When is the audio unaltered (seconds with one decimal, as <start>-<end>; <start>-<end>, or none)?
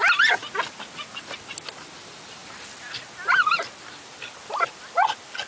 0.0-5.5